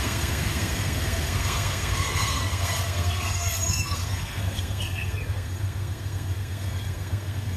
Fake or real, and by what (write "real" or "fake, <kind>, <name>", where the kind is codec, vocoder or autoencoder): fake, codec, SNAC